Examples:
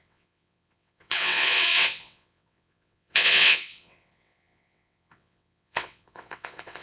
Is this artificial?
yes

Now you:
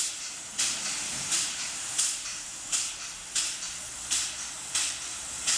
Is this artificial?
yes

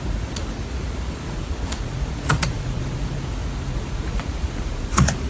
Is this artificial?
yes